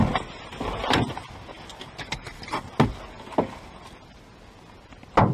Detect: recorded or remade recorded